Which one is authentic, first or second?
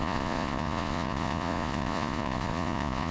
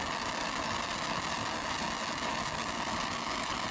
second